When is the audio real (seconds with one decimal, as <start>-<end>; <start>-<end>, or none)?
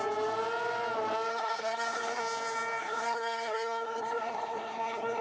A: 0.0-1.3; 2.2-2.8